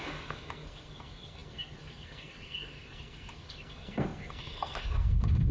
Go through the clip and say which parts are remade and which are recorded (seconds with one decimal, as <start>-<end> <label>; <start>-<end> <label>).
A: 0.0-5.5 remade